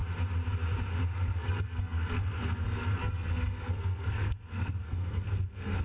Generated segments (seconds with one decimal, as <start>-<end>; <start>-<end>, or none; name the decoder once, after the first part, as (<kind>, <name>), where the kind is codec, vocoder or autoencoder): 1.0-5.8 (codec, SNAC)